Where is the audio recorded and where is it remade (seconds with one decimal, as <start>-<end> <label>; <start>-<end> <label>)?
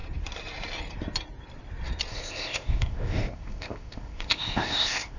0.0-2.1 recorded; 2.1-5.2 remade